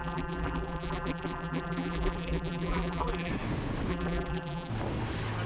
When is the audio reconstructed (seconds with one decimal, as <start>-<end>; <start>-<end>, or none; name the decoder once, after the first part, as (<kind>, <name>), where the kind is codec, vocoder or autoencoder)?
0.0-3.3 (vocoder, BigVGAN v2); 3.9-4.7